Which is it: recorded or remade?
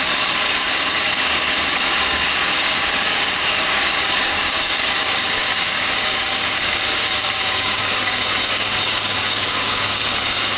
remade